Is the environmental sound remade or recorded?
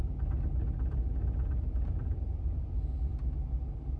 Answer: recorded